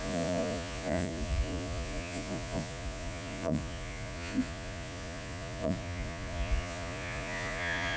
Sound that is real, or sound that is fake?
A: fake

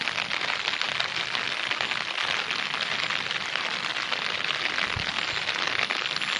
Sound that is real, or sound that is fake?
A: real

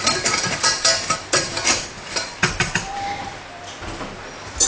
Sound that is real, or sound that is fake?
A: real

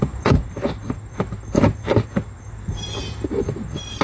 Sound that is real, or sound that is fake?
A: real